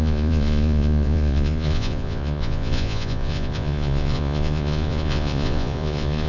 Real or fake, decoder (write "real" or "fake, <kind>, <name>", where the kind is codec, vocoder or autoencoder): fake, vocoder, Vocos